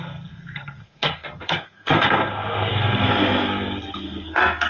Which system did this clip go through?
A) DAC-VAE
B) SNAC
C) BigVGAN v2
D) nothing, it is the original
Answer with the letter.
B